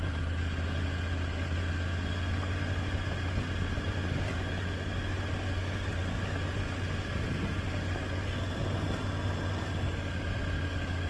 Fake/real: real